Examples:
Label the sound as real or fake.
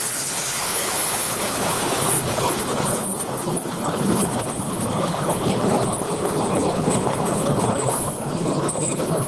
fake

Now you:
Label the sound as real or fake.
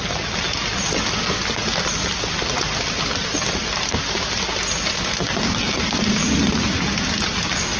real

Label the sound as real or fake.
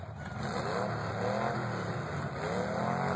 real